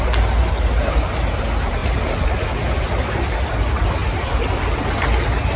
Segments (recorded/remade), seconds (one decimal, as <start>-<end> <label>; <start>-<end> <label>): 0.0-5.6 recorded